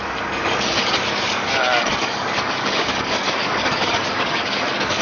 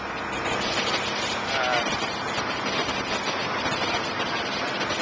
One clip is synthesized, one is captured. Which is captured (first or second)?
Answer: second